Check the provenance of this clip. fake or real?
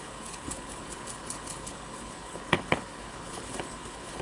fake